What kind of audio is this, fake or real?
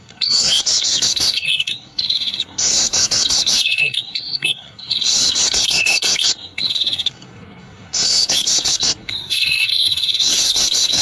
fake